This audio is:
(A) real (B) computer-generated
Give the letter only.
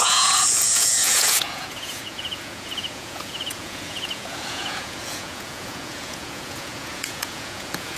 B